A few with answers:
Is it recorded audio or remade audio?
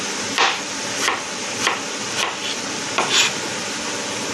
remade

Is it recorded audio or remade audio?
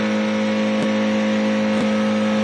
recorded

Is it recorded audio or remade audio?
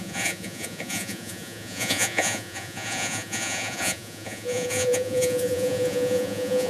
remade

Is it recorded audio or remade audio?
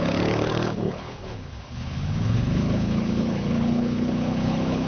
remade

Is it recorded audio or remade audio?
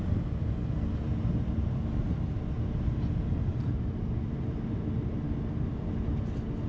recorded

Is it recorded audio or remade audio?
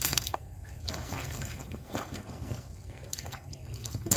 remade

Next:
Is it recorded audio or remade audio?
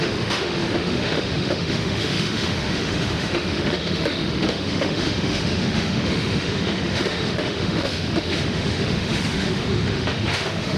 remade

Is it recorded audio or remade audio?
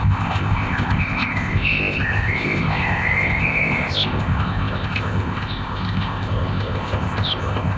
remade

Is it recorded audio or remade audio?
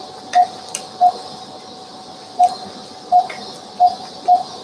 recorded